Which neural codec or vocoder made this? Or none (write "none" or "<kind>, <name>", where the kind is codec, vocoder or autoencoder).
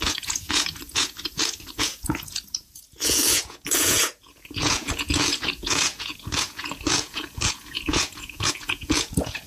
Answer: vocoder, Vocos